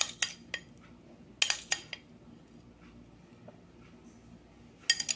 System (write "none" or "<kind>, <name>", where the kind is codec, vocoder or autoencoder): none